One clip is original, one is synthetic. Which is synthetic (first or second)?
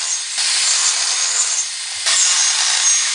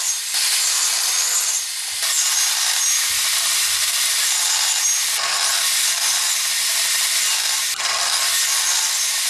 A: second